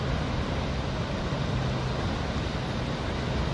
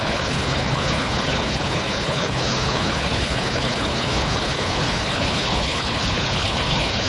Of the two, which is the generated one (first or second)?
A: second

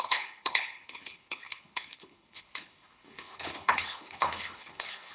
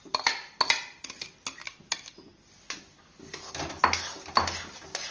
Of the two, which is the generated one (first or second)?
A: first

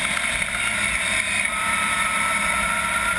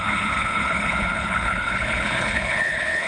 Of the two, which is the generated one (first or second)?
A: second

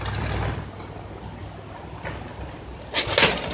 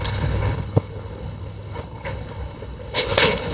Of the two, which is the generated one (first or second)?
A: second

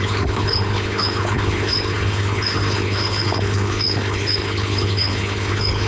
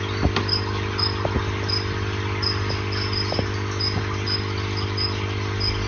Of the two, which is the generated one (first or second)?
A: first